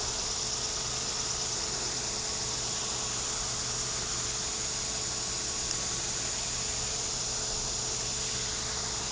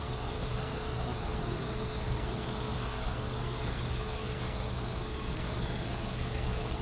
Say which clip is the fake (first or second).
second